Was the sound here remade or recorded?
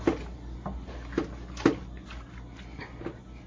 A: recorded